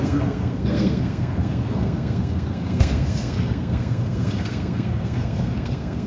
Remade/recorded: remade